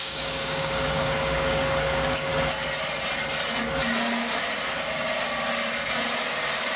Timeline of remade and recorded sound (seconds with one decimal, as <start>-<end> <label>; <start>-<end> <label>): 0.0-2.3 remade; 2.3-6.8 recorded